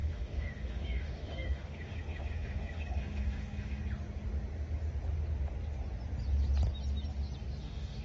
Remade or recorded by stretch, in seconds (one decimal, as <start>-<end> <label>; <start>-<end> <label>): 0.0-3.8 remade; 3.8-7.6 recorded; 7.6-8.0 remade